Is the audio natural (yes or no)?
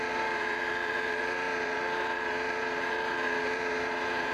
no